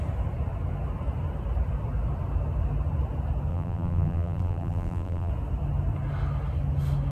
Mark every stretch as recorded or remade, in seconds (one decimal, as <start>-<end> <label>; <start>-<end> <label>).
0.0-3.5 recorded; 3.5-5.3 remade; 5.3-7.1 recorded